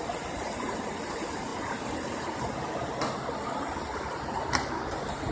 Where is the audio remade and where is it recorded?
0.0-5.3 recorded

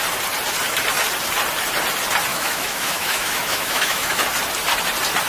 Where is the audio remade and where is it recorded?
0.0-2.3 recorded; 2.3-4.2 remade; 4.2-5.3 recorded

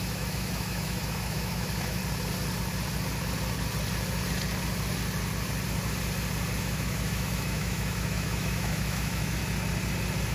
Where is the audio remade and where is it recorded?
0.0-2.0 remade; 2.0-6.6 recorded; 6.6-9.4 remade; 9.4-10.3 recorded

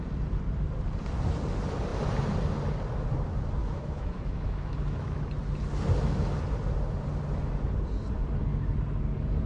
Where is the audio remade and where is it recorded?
0.0-3.6 recorded; 3.6-5.2 remade; 5.2-9.5 recorded